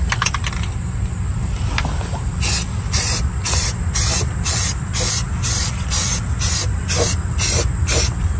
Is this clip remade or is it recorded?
recorded